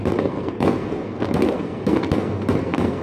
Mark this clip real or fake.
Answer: fake